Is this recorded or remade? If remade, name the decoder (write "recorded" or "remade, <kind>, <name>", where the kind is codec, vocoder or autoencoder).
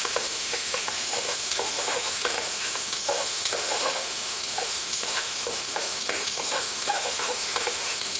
remade, autoencoder, DAC-VAE